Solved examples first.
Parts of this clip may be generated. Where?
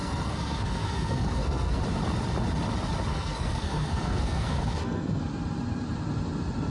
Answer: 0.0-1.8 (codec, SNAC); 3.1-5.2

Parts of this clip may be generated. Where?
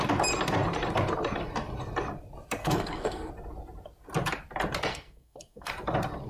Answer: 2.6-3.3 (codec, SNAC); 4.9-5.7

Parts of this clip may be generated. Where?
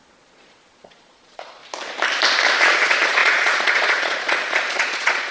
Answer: 0.0-1.6 (vocoder, Vocos); 2.6-5.3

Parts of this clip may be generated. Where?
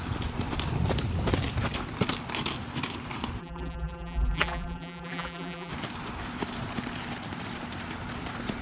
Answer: 3.4-5.7 (vocoder, BigVGAN v2)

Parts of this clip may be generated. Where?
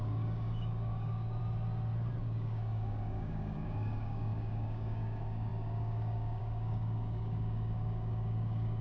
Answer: 0.0-1.4 (codec, DAC); 2.2-8.8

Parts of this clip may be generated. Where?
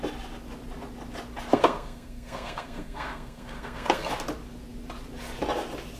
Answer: 1.5-4.1 (codec, SNAC)